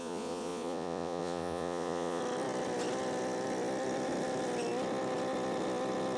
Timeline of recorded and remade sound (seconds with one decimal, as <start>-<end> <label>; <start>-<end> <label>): 0.0-2.2 remade; 2.2-6.2 recorded